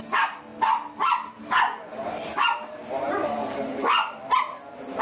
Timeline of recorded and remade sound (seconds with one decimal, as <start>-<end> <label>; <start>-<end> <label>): 0.0-5.0 recorded